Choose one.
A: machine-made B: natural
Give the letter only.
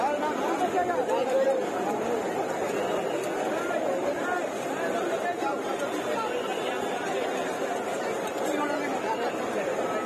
B